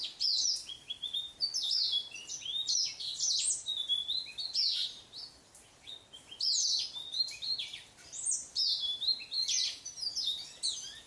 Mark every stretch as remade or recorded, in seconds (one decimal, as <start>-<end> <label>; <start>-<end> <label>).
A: 0.0-7.1 recorded; 7.1-10.5 remade; 10.5-11.1 recorded